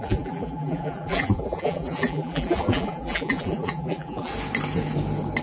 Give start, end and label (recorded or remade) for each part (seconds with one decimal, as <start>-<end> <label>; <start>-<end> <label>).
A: 0.0-4.3 remade; 4.3-5.4 recorded